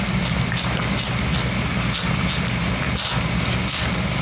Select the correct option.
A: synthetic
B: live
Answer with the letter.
B